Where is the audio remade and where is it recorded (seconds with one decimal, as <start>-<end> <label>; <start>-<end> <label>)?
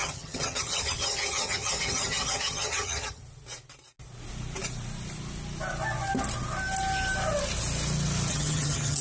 0.0-3.2 remade; 3.2-8.3 recorded; 8.3-9.0 remade